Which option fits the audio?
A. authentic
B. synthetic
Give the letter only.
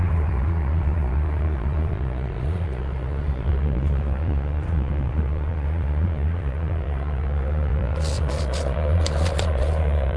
B